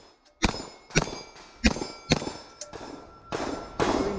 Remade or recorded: recorded